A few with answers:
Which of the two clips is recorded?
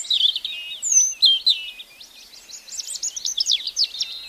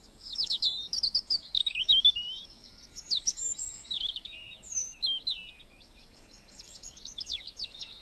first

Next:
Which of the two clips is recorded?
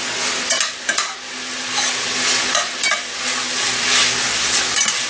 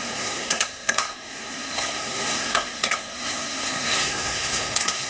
first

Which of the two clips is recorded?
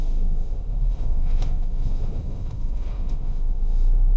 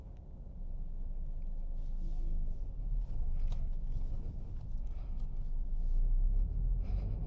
second